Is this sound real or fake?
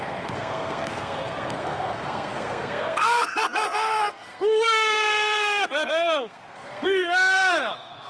fake